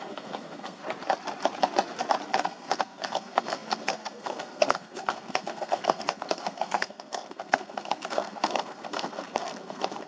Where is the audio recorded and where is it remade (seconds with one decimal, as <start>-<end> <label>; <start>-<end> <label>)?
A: 0.0-0.8 remade; 0.8-2.3 recorded; 2.3-10.1 remade